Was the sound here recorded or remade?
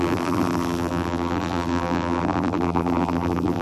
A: remade